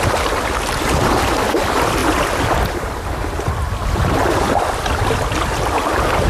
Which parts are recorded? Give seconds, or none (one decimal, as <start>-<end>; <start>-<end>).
0.0-6.3

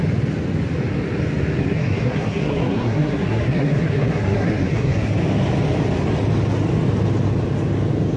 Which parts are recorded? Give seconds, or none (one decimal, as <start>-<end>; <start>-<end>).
0.0-1.6; 5.1-8.2

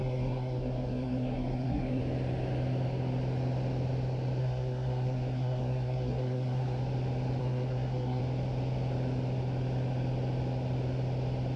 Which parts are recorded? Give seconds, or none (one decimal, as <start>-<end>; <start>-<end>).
2.0-4.4; 6.8-7.4; 8.2-11.6

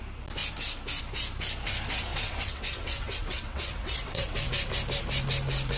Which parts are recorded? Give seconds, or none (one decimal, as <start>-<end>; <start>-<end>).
0.0-2.1; 4.5-5.8

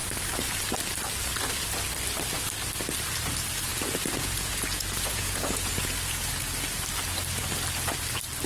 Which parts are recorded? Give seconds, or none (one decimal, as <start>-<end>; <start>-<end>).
0.0-3.7; 6.3-8.5

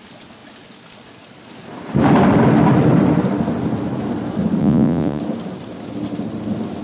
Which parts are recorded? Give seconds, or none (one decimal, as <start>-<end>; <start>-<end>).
0.0-4.6; 5.2-6.8

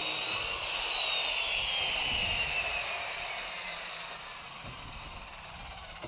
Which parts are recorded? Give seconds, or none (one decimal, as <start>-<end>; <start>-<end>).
0.0-2.6